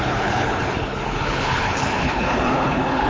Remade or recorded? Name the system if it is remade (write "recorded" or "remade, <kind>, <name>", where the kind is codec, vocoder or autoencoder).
remade, codec, HILCodec